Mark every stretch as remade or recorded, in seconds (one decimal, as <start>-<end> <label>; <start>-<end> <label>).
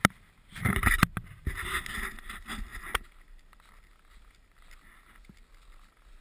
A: 0.0-6.2 recorded